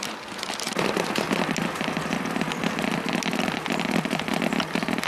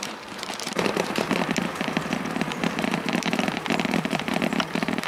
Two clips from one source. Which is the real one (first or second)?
first